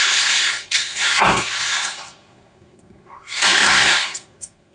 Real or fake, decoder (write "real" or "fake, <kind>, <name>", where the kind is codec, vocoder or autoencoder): fake, codec, SNAC